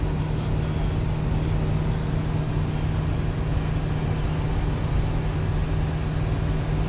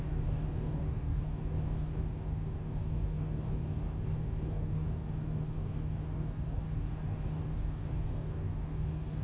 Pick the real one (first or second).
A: first